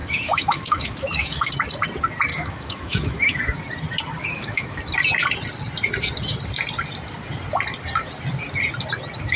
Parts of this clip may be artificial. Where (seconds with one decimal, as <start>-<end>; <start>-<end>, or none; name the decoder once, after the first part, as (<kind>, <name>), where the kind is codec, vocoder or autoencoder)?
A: 0.0-1.5 (autoencoder, DAC-VAE); 2.3-3.4; 4.2-4.8